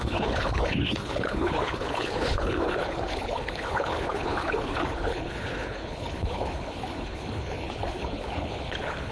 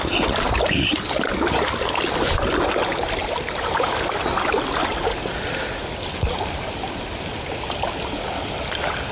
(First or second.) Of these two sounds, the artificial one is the first